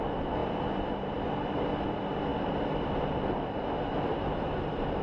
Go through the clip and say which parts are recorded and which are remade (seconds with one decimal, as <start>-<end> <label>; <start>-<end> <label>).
0.0-4.1 recorded; 4.1-4.6 remade; 4.6-5.0 recorded